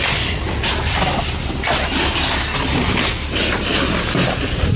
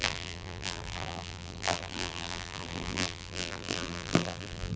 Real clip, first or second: first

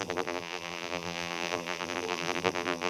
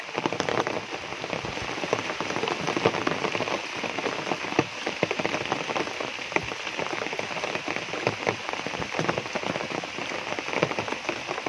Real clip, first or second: second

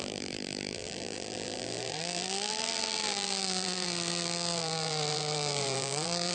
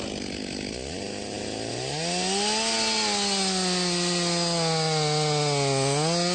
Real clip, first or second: second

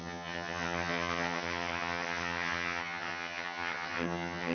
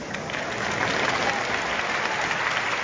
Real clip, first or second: second